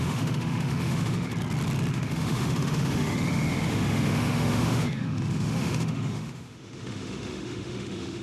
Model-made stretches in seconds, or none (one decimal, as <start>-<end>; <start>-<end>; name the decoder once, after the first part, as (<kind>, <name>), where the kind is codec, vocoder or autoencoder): 0.0-1.3 (autoencoder, DAC-VAE); 1.9-8.2